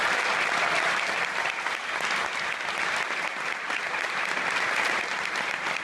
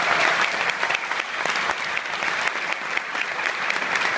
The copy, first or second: second